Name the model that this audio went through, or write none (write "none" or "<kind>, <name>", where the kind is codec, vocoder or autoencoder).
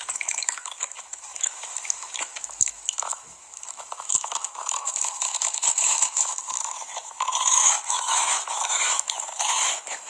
autoencoder, DAC-VAE